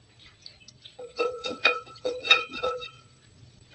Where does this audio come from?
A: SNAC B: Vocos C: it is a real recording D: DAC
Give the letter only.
B